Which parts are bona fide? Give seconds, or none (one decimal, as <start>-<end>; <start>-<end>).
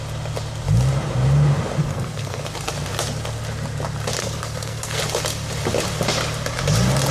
0.0-1.8; 2.4-4.2; 5.0-7.1